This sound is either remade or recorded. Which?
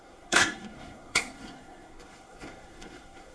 remade